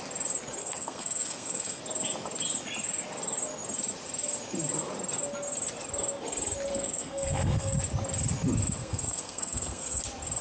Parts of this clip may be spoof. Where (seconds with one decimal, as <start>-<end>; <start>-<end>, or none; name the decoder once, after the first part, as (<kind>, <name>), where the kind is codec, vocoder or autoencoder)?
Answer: 0.6-1.8 (codec, SNAC); 6.7-7.8; 8.8-10.0